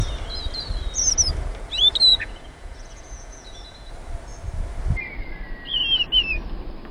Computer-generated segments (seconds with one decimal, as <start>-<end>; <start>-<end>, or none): 2.1-3.9